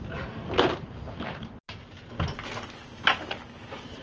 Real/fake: real